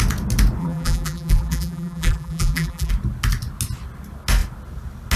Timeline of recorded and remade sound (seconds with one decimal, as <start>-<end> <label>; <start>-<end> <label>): 0.0-0.6 recorded; 0.6-2.9 remade; 2.9-5.2 recorded